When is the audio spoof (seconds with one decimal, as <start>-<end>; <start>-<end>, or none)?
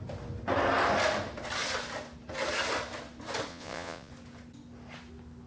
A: 3.5-4.1